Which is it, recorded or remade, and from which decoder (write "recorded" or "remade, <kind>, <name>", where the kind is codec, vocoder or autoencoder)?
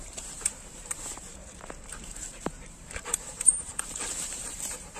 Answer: remade, vocoder, BigVGAN v2